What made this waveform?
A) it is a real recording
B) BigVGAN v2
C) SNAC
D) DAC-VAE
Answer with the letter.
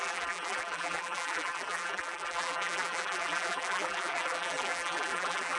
B